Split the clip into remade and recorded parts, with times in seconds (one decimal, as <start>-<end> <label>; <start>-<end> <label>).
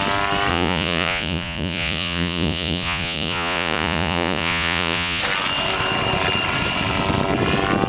0.0-0.5 recorded; 0.5-5.2 remade; 5.2-7.9 recorded